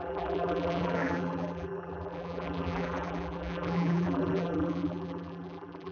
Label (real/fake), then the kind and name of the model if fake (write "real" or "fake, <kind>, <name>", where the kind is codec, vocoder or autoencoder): fake, vocoder, BigVGAN v2